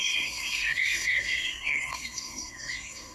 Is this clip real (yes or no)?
no